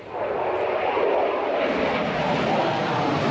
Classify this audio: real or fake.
real